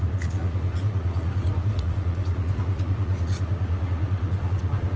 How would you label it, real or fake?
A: fake